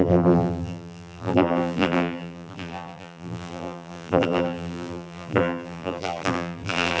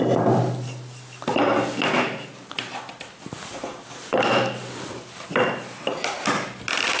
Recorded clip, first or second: second